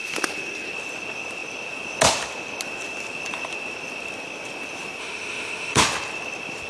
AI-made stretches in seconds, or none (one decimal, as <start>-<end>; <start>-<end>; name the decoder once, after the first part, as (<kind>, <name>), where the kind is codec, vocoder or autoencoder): 5.0-5.8 (autoencoder, DAC-VAE)